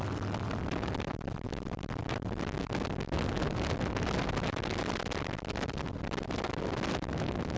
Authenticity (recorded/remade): recorded